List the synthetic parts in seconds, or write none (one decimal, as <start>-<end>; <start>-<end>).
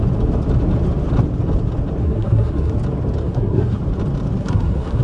2.0-2.7; 3.2-3.8; 4.4-5.0